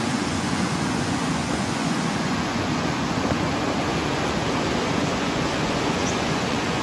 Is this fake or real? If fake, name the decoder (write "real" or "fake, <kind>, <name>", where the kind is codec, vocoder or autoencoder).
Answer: fake, vocoder, Vocos